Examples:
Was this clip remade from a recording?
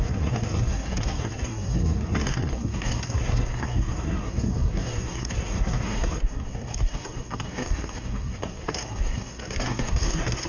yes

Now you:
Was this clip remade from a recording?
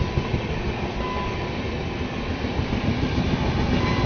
no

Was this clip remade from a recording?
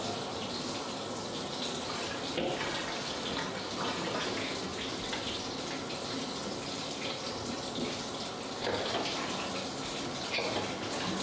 no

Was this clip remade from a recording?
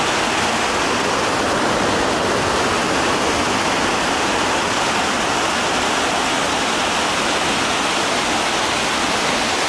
no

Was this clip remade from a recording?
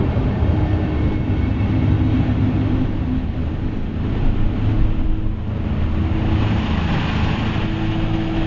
no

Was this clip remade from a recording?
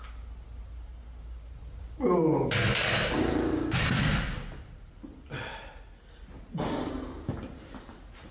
no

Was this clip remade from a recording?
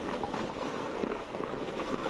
yes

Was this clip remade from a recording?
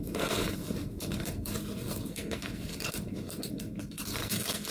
yes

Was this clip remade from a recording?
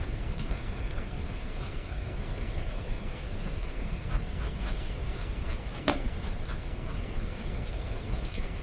yes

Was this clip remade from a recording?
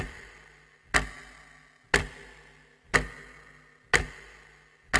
no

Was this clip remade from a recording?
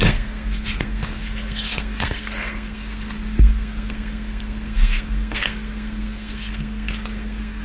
yes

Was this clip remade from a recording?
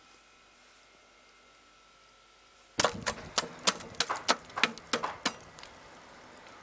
no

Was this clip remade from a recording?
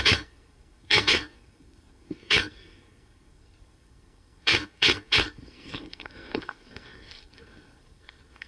yes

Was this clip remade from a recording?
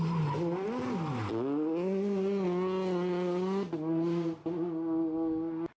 no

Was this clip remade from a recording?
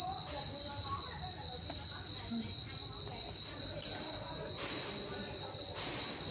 no